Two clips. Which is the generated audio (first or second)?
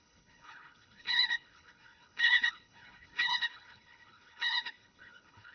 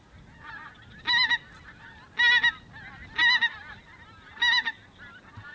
first